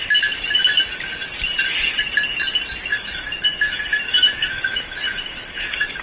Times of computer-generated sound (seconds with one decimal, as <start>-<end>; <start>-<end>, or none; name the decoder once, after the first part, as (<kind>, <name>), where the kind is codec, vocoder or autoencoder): 2.9-6.0 (autoencoder, DAC-VAE)